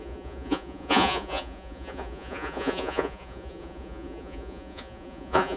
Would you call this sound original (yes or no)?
no